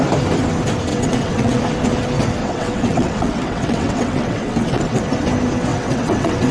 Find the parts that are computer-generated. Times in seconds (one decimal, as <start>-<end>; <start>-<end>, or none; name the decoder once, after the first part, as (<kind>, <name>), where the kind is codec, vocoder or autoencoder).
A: 0.9-1.6 (vocoder, WaveNeXt); 2.4-5.0; 5.7-6.5

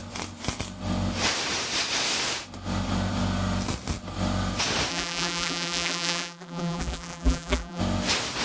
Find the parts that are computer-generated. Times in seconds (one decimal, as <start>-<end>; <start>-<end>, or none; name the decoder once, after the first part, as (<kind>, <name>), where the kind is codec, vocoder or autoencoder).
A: 4.9-7.8 (vocoder, BigVGAN v2)